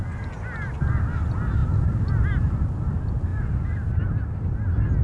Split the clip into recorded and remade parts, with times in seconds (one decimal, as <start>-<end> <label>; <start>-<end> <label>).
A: 0.0-5.0 recorded